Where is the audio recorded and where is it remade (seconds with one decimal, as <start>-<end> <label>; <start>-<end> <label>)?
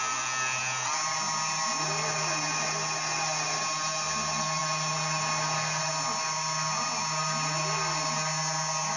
0.0-9.0 recorded